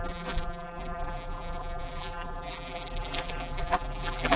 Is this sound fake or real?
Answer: fake